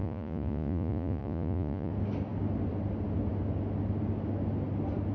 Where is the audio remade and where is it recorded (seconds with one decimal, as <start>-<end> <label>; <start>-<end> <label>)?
0.0-1.9 remade; 1.9-5.1 recorded

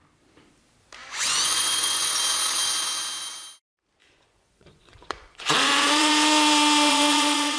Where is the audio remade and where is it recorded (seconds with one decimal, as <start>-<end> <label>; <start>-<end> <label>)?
0.0-1.0 recorded; 1.0-2.1 remade; 2.1-4.0 recorded; 4.0-6.1 remade; 6.1-6.9 recorded; 6.9-7.6 remade